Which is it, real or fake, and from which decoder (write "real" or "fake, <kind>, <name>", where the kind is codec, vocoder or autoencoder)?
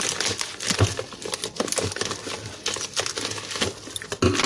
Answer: real